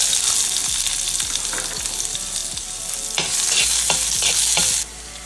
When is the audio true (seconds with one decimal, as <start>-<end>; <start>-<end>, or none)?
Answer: 0.0-5.3